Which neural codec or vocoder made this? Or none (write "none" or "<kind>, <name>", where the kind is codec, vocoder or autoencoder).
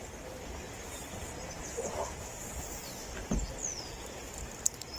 none